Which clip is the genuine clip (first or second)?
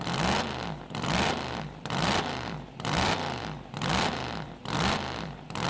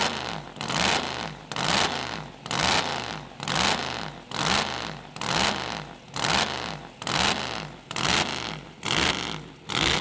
second